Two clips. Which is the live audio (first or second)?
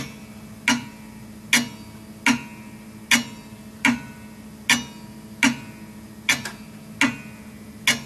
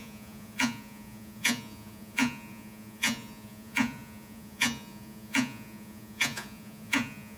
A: first